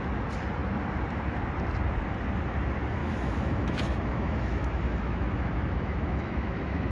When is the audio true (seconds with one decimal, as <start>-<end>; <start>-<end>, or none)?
0.0-3.0

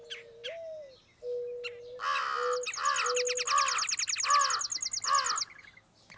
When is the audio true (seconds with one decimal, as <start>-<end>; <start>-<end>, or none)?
0.0-6.2